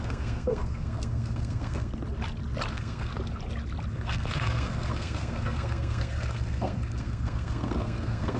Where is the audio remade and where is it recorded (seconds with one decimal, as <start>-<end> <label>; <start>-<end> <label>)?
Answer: 0.0-1.9 remade; 1.9-2.7 recorded; 2.7-3.1 remade; 3.1-3.9 recorded; 3.9-8.4 remade